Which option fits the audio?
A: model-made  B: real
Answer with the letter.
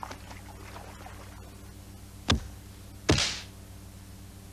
B